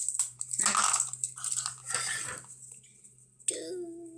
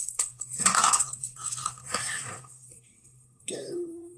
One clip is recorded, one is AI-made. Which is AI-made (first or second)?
second